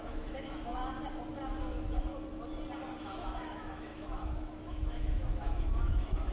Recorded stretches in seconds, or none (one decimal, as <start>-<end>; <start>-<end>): 0.8-1.6; 2.1-3.0